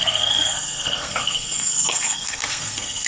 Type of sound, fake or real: fake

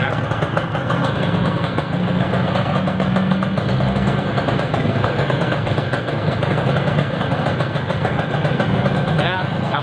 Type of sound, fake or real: fake